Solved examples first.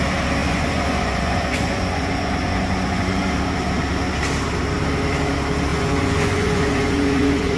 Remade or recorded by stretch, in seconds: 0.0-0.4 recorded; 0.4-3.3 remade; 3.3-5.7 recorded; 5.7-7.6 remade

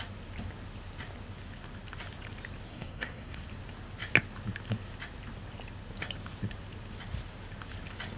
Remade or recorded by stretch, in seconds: 0.0-2.7 recorded; 2.7-3.4 remade; 3.4-8.2 recorded

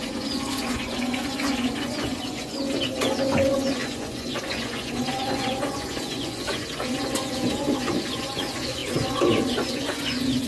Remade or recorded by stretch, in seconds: 0.0-10.5 remade

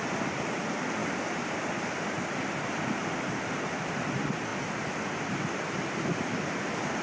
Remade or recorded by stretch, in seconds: 0.0-1.0 remade; 1.0-2.5 recorded; 2.5-7.0 remade

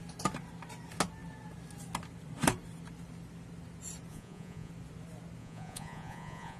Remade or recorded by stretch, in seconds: 0.0-4.1 recorded; 4.1-4.7 remade; 4.7-5.4 recorded; 5.4-6.6 remade

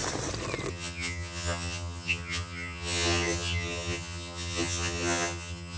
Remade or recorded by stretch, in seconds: 0.0-0.7 recorded; 0.7-5.8 remade

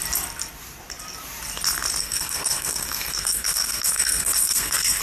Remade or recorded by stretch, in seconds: 0.0-2.0 recorded; 2.0-5.0 remade